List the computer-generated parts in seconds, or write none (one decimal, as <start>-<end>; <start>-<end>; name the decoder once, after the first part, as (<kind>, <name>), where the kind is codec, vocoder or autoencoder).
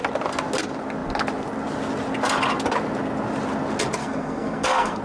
4.0-5.0 (codec, SNAC)